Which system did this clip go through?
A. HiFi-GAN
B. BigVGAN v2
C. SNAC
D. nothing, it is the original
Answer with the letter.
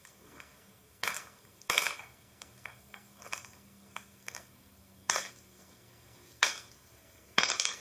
C